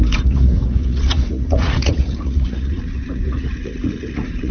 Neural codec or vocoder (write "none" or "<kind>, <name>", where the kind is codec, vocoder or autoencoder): vocoder, Vocos